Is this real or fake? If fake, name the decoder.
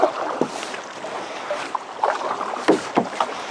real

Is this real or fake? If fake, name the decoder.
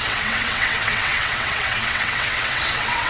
fake, vocoder, WaveNeXt